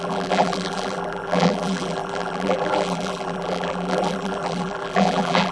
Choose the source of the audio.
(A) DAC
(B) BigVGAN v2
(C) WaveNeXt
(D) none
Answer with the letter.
B